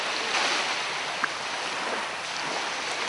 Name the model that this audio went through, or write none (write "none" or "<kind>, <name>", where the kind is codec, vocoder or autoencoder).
none